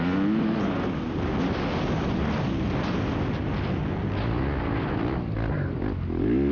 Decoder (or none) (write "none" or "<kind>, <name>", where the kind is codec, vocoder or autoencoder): none